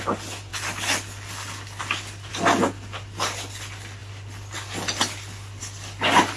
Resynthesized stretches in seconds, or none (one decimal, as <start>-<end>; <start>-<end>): none